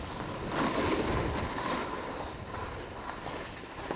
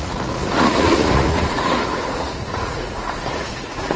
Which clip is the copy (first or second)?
second